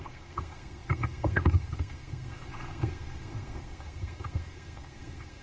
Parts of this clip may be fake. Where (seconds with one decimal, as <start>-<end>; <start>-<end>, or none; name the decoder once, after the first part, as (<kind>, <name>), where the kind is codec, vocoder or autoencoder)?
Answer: 0.0-5.4 (codec, SNAC)